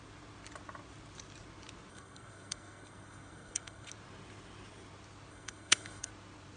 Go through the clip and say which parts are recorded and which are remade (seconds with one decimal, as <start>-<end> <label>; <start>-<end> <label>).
0.0-1.9 recorded; 1.9-3.9 remade; 3.9-5.3 recorded; 5.3-6.1 remade; 6.1-6.6 recorded